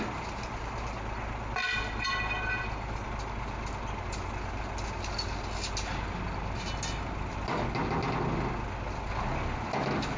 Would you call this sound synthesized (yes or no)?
no